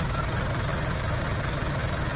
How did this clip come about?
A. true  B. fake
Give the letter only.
A